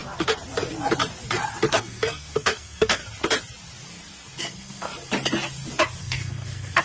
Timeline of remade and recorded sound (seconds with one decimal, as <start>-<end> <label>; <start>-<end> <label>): 0.0-1.7 recorded; 1.7-3.0 remade; 3.0-4.4 recorded; 4.4-4.9 remade; 4.9-6.0 recorded; 6.0-6.8 remade